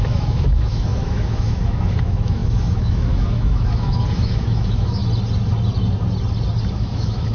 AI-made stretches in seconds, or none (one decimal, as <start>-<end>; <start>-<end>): 0.0-5.0; 6.7-7.3